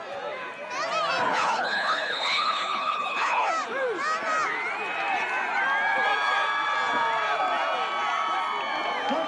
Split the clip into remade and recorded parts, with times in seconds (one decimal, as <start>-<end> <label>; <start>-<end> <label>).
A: 0.0-1.3 recorded; 1.3-3.5 remade; 3.5-9.3 recorded